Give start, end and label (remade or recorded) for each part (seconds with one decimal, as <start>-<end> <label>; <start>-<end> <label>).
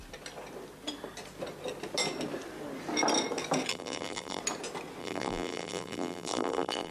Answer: 0.0-3.7 recorded; 3.7-4.4 remade; 4.4-5.0 recorded; 5.0-6.9 remade